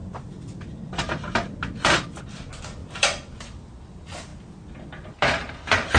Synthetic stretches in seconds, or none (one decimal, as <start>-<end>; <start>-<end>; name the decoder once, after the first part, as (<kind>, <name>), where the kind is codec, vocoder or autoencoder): 2.2-4.3 (vocoder, BigVGAN v2); 5.5-6.0